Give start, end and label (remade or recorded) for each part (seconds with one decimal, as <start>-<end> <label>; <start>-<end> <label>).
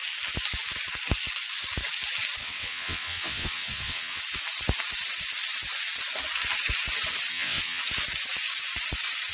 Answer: 0.0-2.4 recorded; 2.4-4.2 remade; 4.2-7.3 recorded; 7.3-7.8 remade; 7.8-9.3 recorded